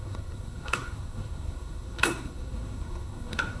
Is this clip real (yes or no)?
no